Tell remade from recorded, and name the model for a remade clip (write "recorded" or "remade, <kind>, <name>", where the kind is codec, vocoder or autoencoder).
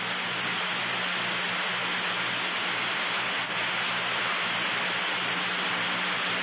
recorded